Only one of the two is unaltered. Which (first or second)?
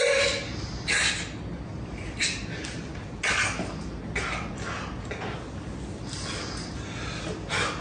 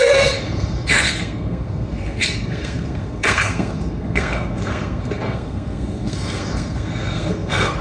first